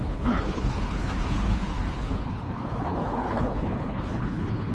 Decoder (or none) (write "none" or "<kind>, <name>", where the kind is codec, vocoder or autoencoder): codec, HILCodec